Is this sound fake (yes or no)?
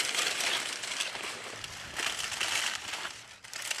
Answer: no